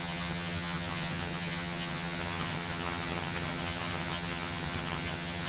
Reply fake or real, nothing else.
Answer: fake